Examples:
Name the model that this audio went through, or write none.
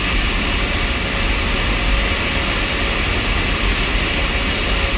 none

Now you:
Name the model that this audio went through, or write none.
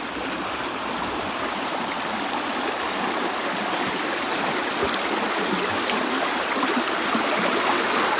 none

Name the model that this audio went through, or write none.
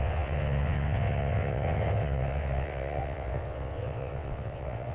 vocoder, WaveNeXt